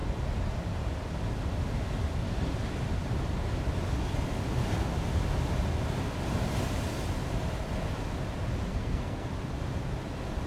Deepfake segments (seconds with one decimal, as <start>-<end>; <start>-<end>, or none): 8.7-9.3